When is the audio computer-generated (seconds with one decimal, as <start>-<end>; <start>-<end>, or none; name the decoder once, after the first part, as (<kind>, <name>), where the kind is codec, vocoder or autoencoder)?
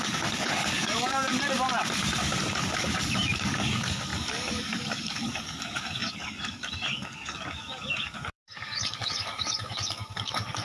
0.0-1.3 (codec, DAC); 2.6-10.6